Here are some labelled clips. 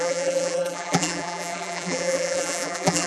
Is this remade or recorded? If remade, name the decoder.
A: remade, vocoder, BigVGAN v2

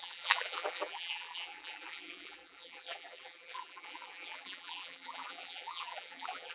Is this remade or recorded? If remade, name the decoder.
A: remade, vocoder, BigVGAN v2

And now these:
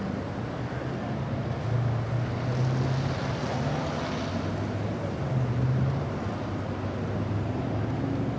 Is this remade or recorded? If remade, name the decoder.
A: recorded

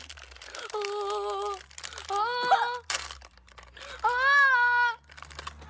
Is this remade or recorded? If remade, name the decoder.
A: recorded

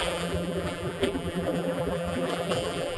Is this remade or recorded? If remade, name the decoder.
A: remade, vocoder, BigVGAN v2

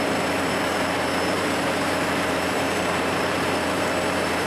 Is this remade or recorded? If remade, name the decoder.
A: remade, vocoder, BigVGAN v2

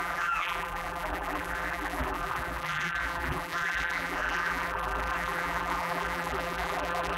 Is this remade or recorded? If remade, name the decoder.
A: remade, vocoder, BigVGAN v2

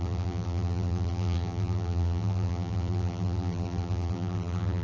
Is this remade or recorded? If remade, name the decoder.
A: remade, vocoder, BigVGAN v2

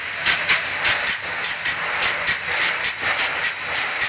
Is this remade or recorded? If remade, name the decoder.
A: remade, vocoder, BigVGAN v2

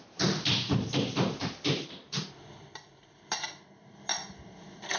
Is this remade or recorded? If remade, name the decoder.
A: remade, vocoder, BigVGAN v2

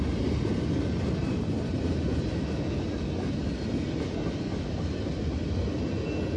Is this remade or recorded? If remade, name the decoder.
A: recorded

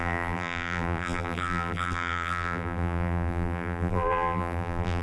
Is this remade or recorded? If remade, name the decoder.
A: remade, vocoder, BigVGAN v2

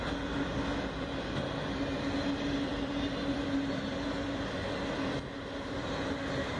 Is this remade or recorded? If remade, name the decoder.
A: recorded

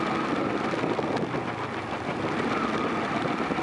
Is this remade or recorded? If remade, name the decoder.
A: recorded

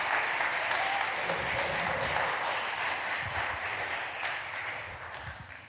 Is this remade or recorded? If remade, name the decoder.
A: remade, vocoder, BigVGAN v2